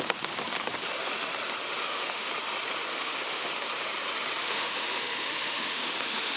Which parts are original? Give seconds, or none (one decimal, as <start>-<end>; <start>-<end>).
0.0-1.8; 2.3-2.9; 3.5-4.4